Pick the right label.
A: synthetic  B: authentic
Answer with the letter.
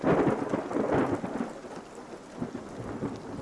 B